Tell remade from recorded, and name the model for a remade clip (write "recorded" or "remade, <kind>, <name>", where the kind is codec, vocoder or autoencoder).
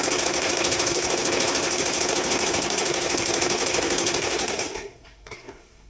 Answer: remade, codec, SNAC